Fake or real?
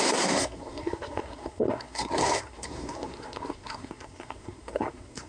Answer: fake